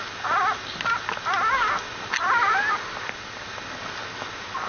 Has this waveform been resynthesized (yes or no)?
no